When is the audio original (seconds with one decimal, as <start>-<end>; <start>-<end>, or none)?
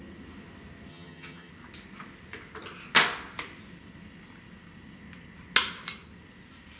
0.0-0.9; 1.5-6.8